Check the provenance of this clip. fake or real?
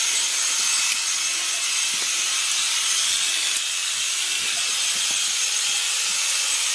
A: fake